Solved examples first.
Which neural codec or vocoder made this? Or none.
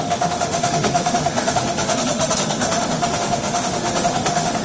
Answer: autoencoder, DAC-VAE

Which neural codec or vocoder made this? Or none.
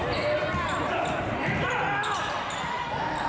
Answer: none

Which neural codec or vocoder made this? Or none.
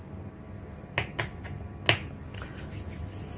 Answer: none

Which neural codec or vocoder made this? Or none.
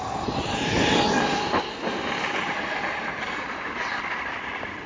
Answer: none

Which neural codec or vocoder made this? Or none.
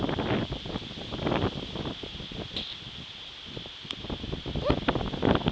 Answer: none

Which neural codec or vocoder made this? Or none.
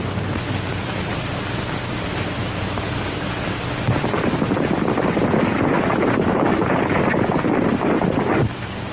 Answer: none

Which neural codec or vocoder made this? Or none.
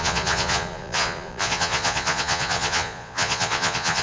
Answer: vocoder, Vocos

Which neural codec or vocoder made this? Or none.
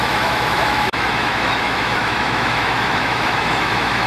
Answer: autoencoder, DAC-VAE